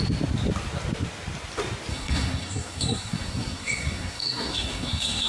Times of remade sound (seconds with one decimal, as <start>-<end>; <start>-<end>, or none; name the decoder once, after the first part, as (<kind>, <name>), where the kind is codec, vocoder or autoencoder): 1.9-5.3 (codec, SNAC)